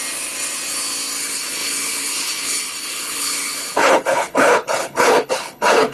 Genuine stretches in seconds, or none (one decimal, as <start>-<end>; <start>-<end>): 0.0-1.2